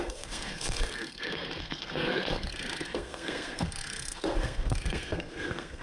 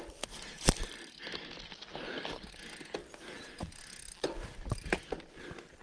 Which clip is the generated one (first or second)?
first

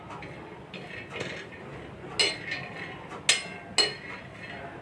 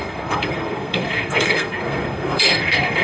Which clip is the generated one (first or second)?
second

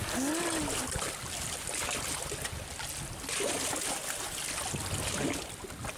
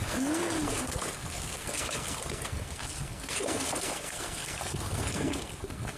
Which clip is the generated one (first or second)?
second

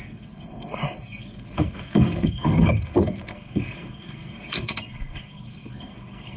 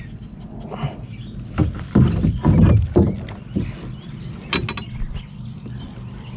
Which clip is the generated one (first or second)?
first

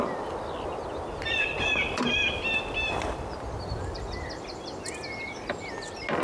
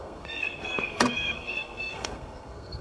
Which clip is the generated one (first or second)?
second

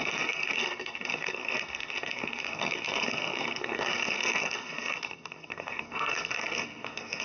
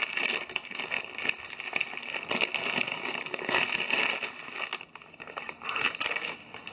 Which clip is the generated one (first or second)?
first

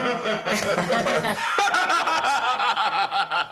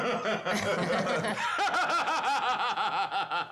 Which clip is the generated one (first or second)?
first